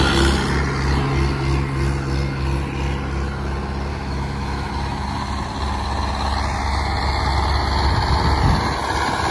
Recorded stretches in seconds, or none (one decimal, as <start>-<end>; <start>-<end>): 0.0-3.9; 4.7-9.3